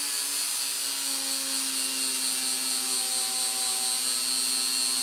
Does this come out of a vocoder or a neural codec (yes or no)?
no